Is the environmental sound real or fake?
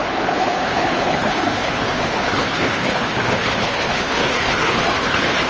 fake